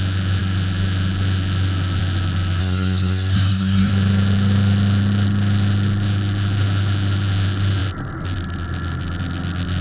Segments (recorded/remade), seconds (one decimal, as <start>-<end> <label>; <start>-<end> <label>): 0.0-2.6 recorded; 2.6-3.9 remade; 3.9-9.8 recorded